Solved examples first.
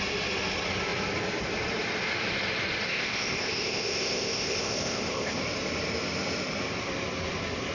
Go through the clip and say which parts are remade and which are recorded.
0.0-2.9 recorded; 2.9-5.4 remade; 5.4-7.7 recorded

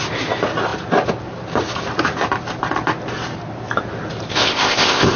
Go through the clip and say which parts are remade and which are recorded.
0.0-4.3 recorded; 4.3-5.2 remade

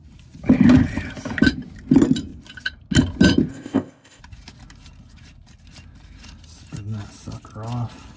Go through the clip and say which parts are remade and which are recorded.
0.0-3.5 recorded; 3.5-4.2 remade; 4.2-8.2 recorded